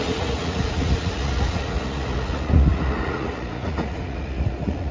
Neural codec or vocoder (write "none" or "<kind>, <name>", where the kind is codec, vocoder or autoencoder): vocoder, Vocos